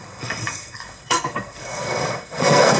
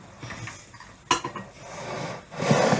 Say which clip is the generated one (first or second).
first